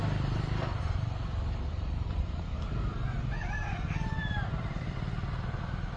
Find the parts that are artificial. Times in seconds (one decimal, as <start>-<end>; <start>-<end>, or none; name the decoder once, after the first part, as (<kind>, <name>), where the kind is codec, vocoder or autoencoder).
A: 0.0-2.7 (vocoder, BigVGAN v2); 4.2-4.9